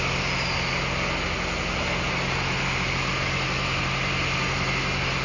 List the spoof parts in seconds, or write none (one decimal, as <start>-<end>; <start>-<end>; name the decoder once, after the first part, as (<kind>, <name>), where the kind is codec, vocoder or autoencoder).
none

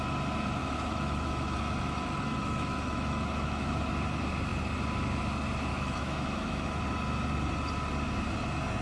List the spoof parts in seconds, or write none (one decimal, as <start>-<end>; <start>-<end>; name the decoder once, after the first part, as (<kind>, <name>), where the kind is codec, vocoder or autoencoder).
0.6-3.9 (autoencoder, DAC-VAE); 5.7-6.8

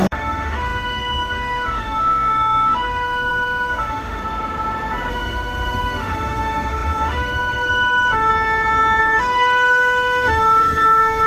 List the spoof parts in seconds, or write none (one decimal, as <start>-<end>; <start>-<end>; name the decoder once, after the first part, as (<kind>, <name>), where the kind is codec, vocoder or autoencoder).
0.0-4.2 (autoencoder, DAC-VAE); 5.1-8.3; 9.0-11.3

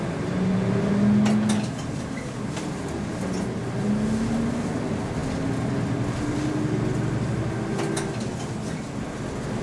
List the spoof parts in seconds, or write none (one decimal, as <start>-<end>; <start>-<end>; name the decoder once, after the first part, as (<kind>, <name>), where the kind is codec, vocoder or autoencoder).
none

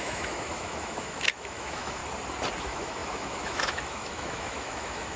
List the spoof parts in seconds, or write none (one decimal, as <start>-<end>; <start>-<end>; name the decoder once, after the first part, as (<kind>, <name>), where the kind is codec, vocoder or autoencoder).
0.0-2.0 (autoencoder, DAC-VAE); 2.6-5.2